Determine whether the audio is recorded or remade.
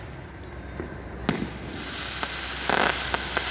recorded